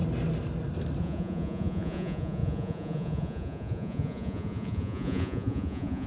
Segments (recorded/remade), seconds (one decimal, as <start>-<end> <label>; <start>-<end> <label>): 0.0-1.0 recorded; 1.0-6.1 remade